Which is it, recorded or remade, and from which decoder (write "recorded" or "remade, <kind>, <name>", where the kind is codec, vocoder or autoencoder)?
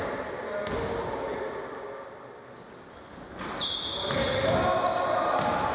recorded